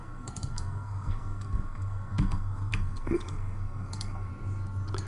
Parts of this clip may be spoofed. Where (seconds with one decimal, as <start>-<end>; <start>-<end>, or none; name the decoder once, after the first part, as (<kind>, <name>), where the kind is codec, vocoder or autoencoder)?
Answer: 0.0-4.3 (codec, SNAC)